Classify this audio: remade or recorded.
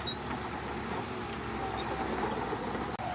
recorded